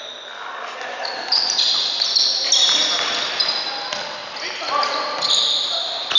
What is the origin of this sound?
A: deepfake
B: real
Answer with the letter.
B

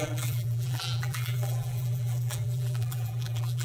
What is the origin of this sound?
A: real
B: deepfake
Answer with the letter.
B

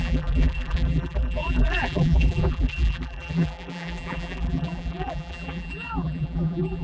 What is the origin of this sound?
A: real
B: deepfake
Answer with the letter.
B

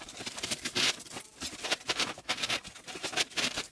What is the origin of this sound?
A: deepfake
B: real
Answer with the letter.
A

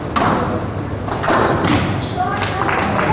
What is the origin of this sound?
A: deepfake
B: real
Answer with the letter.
B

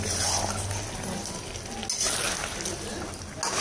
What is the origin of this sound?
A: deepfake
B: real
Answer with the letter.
B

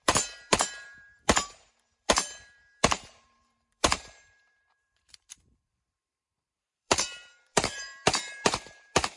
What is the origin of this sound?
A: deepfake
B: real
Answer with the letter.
A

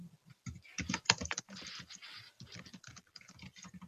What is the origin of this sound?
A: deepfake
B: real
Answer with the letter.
A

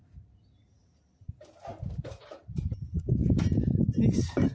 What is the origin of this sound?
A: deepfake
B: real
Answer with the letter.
A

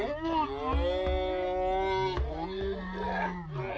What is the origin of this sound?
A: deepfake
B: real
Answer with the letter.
B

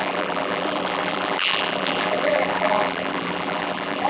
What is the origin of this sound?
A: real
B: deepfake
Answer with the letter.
B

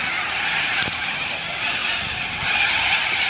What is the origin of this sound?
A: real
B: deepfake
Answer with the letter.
B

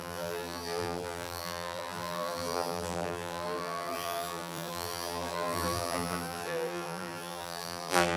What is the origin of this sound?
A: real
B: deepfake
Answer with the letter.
B